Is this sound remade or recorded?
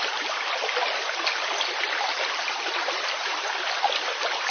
recorded